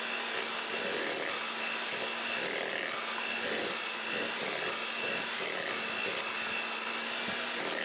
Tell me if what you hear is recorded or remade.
recorded